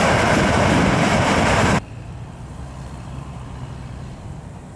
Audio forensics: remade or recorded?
remade